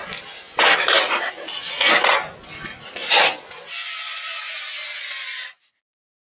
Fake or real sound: real